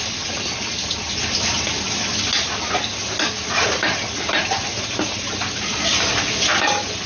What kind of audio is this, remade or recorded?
recorded